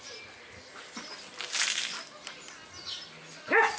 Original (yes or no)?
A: yes